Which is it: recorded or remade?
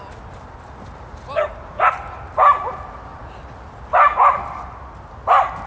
recorded